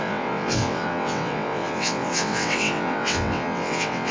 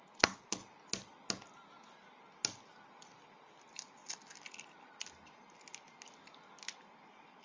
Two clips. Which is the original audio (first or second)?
second